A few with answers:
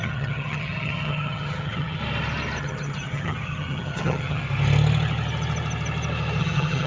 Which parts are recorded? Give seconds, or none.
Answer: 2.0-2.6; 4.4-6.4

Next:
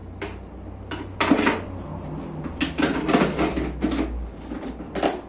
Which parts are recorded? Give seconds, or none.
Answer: 0.0-5.3

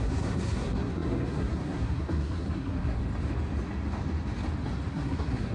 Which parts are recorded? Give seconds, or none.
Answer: 3.0-4.9

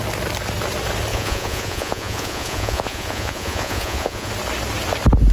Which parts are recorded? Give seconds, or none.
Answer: 0.0-1.1; 4.3-5.3

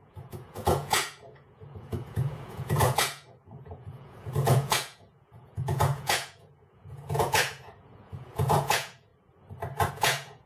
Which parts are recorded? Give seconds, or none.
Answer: 9.1-9.9

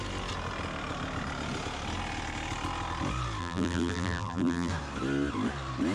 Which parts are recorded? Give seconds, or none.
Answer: 0.0-3.4; 4.7-5.9

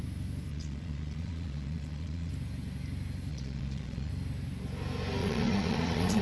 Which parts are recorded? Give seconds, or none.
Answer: 0.0-0.5; 2.3-3.3; 4.1-5.2